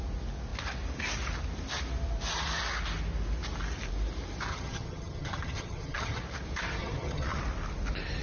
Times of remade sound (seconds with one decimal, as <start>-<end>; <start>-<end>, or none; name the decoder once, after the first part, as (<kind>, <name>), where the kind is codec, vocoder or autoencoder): 4.5-6.2 (vocoder, HiFi-GAN); 6.8-7.4